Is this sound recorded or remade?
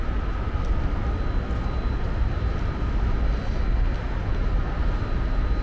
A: recorded